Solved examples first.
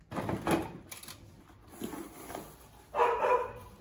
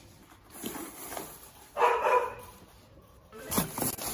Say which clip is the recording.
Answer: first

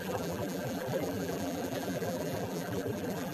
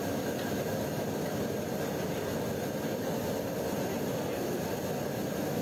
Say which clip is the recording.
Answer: second